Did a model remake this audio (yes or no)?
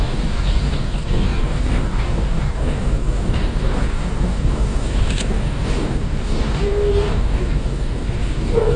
yes